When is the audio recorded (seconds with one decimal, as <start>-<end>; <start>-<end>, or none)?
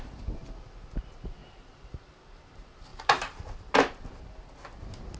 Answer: 0.0-1.4; 1.9-2.9; 3.7-5.2